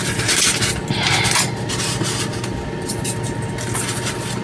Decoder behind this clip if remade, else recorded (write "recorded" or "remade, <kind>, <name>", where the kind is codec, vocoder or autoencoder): recorded